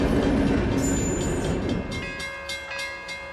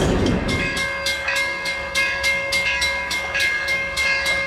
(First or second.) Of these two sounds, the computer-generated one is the second